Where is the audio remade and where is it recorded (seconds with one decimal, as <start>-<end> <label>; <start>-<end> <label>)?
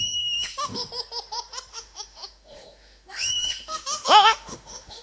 0.0-0.9 remade; 0.9-1.7 recorded; 1.7-5.0 remade